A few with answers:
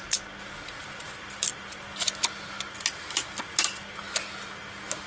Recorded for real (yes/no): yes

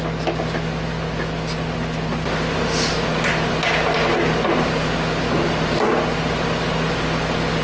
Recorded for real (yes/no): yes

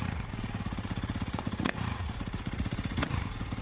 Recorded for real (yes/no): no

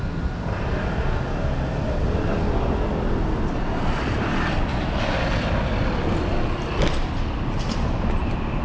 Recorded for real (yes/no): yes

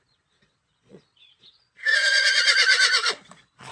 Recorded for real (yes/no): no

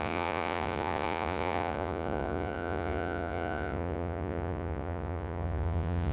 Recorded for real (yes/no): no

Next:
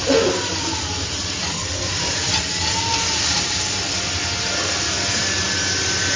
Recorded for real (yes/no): yes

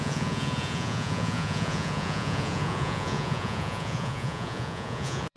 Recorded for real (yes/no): no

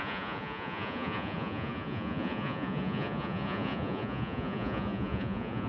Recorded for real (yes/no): no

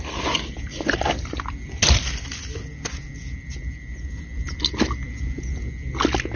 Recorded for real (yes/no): yes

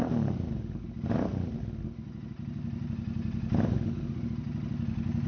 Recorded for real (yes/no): yes